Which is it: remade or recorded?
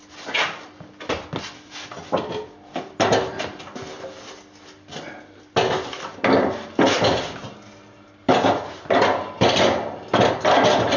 recorded